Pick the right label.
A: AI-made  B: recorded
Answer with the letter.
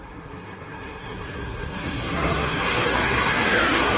A